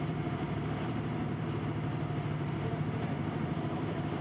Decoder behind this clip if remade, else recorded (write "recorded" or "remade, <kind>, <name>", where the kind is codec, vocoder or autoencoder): remade, vocoder, BigVGAN v2